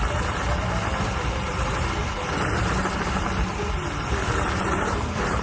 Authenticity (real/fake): fake